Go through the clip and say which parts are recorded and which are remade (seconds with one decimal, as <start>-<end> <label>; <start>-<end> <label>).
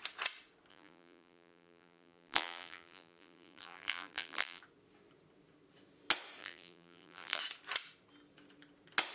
0.0-0.7 recorded; 0.7-4.6 remade; 4.6-6.4 recorded; 6.4-7.4 remade; 7.4-9.1 recorded